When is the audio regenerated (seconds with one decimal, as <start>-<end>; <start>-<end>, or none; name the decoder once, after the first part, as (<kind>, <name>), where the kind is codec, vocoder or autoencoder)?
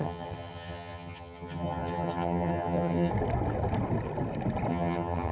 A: 0.0-3.1 (vocoder, HiFi-GAN); 4.7-5.3